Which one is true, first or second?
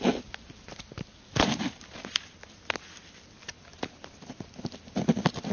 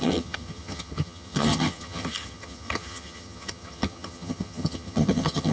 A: first